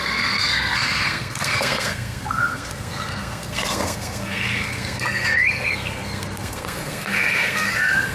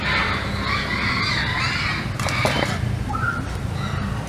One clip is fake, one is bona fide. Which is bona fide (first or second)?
second